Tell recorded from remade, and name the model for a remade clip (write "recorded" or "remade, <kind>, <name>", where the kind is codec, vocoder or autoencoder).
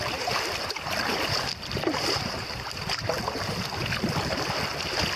recorded